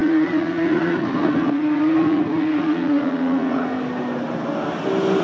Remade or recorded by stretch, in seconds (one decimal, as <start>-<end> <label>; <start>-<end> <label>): 0.0-3.7 remade; 3.7-5.2 recorded